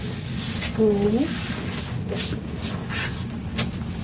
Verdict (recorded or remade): recorded